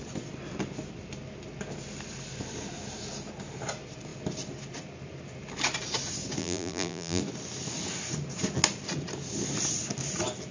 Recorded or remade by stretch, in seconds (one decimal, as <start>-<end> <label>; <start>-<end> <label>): 0.0-6.4 recorded; 6.4-7.2 remade; 7.2-10.5 recorded